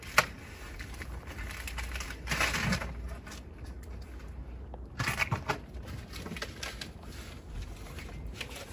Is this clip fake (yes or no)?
no